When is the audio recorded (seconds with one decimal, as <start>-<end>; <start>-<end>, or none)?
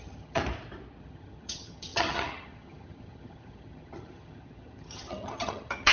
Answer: 0.4-1.0